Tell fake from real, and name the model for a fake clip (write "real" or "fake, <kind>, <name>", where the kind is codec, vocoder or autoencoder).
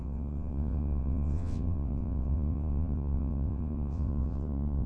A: fake, vocoder, WaveNeXt